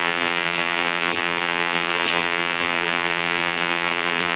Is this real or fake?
fake